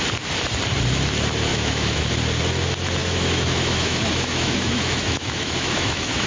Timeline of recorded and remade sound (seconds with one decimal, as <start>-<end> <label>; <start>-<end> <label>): 0.0-1.5 recorded; 1.5-2.1 remade; 2.1-3.0 recorded; 3.0-6.3 remade